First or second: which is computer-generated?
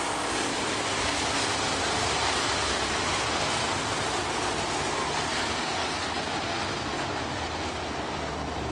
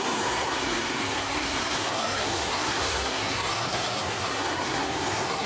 second